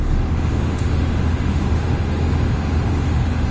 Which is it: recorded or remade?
remade